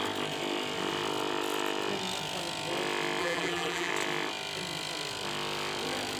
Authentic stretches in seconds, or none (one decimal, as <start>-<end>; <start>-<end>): 0.0-3.2; 3.9-6.2